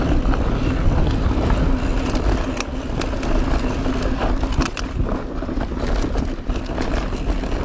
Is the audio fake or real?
real